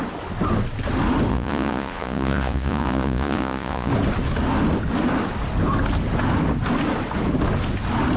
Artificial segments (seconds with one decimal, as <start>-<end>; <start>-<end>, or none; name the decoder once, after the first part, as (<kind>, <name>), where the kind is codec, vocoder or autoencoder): 1.3-3.9 (vocoder, Vocos)